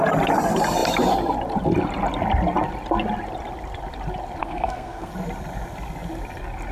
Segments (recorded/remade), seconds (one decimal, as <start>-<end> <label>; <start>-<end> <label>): 0.0-4.4 recorded; 4.4-5.1 remade; 5.1-6.7 recorded